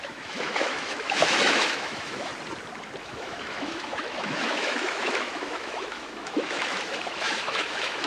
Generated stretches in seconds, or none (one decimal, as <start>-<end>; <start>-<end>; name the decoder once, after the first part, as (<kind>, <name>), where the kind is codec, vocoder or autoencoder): 0.0-2.3 (autoencoder, DAC-VAE); 3.0-8.1